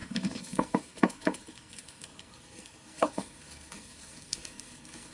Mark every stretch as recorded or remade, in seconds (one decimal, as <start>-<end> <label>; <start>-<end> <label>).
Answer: 0.0-5.1 remade